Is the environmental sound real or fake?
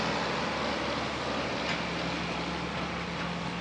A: real